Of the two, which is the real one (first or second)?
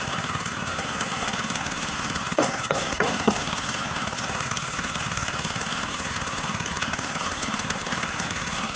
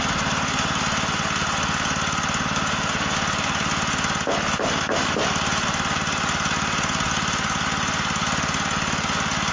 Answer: second